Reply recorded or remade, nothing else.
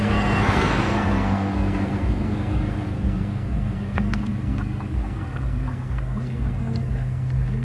remade